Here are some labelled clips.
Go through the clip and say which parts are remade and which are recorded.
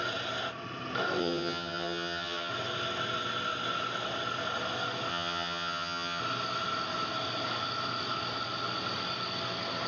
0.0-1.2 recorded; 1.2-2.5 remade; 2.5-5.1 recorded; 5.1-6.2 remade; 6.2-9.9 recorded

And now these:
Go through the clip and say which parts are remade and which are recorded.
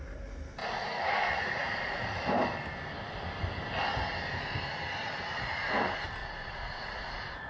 0.0-0.6 recorded; 0.6-2.2 remade; 2.2-6.2 recorded; 6.2-7.5 remade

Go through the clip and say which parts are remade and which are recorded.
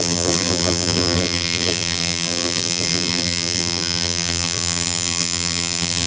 0.0-6.1 remade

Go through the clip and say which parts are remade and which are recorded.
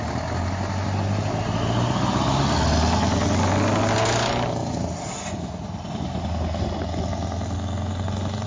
0.0-8.5 recorded